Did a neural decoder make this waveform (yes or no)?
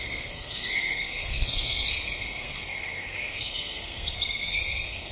yes